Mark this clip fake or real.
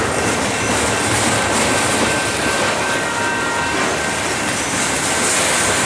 real